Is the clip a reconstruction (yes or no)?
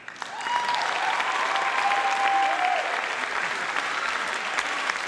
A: no